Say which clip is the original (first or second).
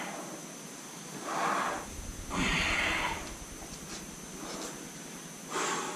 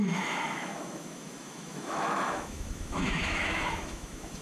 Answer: first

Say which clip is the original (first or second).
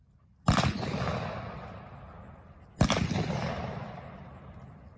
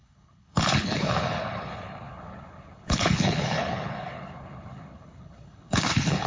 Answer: first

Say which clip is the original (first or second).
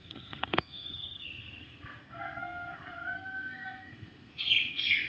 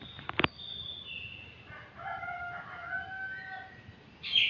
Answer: second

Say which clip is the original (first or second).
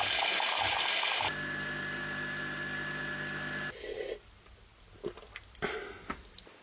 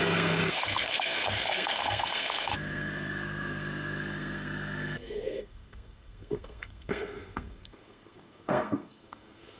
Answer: first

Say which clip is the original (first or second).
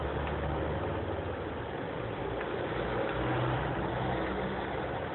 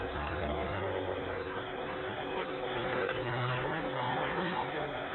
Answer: first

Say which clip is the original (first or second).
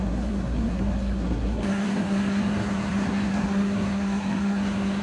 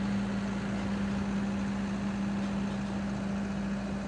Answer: second